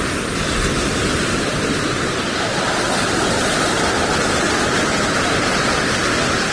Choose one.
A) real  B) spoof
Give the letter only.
A